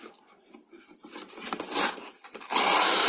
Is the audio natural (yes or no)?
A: yes